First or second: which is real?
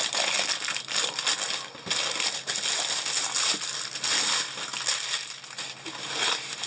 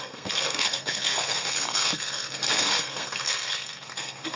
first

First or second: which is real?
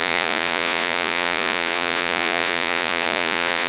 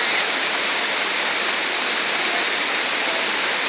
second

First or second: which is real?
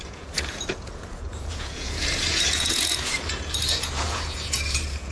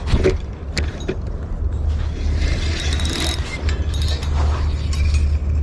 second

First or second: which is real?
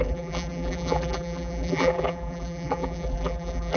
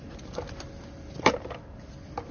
second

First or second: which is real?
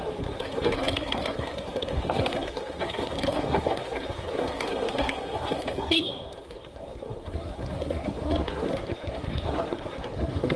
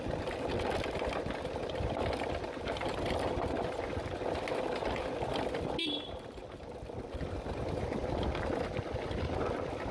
second